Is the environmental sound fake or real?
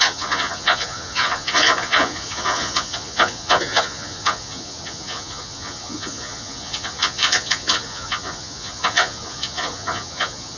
fake